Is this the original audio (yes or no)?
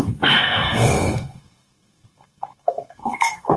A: no